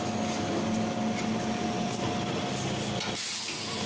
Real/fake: real